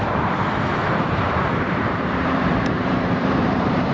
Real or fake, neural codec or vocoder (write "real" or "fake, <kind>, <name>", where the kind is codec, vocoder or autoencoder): fake, vocoder, BigVGAN v2